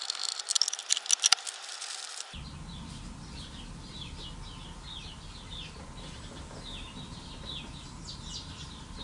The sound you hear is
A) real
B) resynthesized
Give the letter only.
A